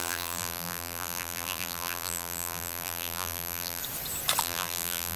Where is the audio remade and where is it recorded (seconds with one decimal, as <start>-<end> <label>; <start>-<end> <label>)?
0.0-3.8 remade; 3.8-4.4 recorded; 4.4-5.2 remade